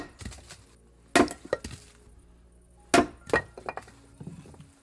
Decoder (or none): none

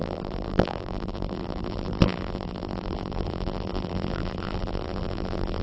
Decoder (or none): vocoder, BigVGAN v2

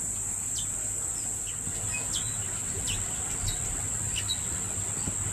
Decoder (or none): vocoder, BigVGAN v2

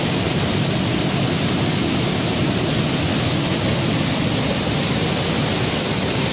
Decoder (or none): none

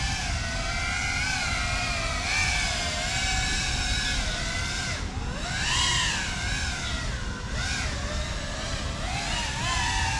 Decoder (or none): none